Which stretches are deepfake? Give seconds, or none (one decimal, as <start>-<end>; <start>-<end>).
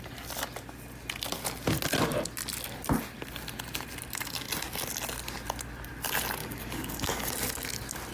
6.4-7.3